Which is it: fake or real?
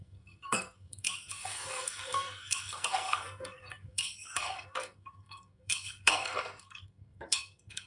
fake